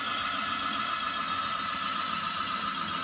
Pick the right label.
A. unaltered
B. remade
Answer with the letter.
A